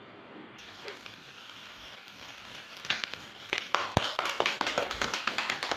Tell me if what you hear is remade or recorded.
remade